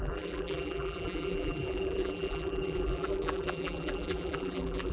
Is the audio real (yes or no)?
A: no